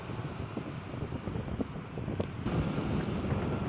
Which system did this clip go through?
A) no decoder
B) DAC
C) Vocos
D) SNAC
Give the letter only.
A